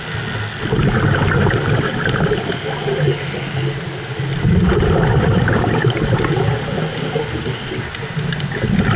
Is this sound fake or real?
real